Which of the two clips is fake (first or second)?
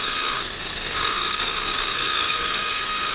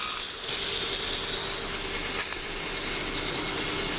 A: first